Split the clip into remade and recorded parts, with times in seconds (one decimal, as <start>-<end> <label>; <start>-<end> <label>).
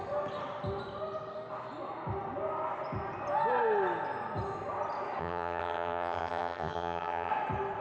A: 0.0-5.2 recorded; 5.2-7.3 remade; 7.3-7.8 recorded